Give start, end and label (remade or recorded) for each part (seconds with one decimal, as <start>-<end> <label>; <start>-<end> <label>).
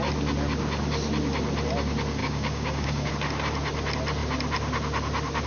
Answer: 0.0-2.2 recorded; 2.2-3.1 remade; 3.1-5.5 recorded